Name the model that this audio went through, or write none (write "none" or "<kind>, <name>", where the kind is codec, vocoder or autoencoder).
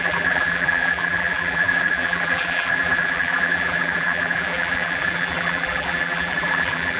vocoder, BigVGAN v2